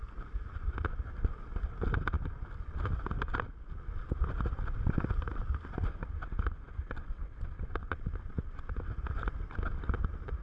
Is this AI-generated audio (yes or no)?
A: no